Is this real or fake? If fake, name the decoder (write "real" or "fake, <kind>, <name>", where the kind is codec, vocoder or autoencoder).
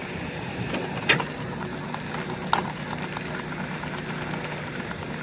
real